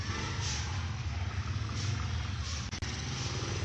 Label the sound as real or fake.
real